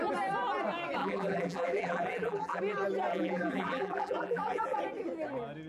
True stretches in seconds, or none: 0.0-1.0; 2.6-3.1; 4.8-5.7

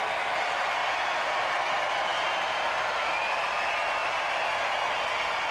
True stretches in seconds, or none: 0.8-1.3; 2.1-2.9